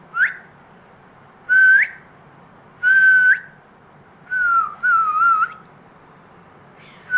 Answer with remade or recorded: recorded